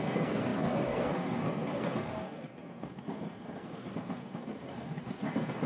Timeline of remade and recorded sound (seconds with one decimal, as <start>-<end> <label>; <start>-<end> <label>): 0.0-5.7 remade